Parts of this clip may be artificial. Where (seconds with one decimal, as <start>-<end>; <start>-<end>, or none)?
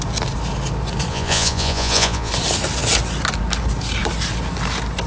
1.1-2.3